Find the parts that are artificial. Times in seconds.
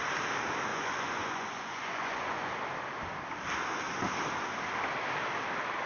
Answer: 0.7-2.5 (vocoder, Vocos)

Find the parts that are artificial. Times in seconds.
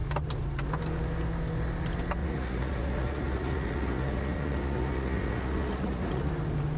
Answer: 2.2-6.3 (vocoder, Vocos)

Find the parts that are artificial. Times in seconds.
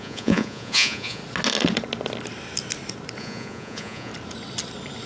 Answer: 0.0-1.2 (vocoder, Vocos); 3.2-4.1